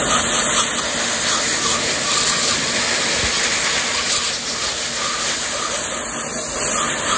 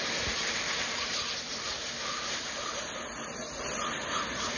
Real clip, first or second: first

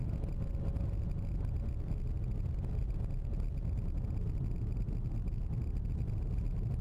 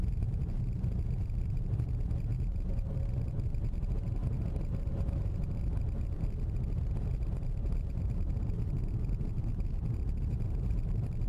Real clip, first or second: first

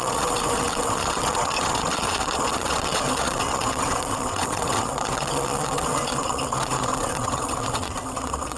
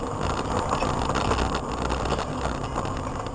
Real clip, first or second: second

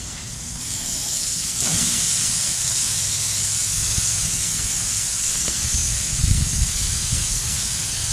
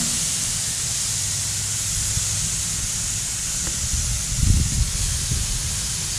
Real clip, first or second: second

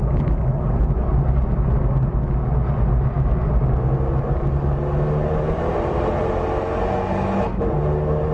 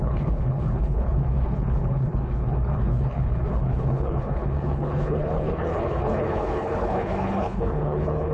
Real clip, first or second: first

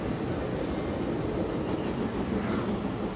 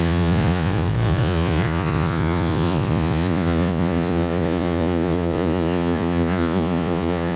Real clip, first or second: first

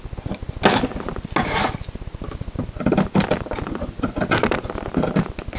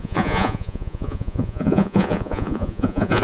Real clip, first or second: first